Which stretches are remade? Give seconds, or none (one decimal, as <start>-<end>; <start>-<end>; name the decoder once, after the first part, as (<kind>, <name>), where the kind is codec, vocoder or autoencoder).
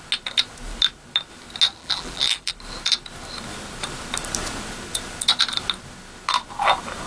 1.8-2.5 (vocoder, BigVGAN v2)